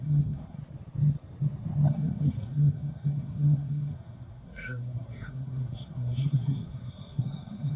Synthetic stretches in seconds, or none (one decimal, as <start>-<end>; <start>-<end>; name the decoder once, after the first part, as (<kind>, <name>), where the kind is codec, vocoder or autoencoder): 0.0-0.6 (codec, SNAC); 1.9-7.8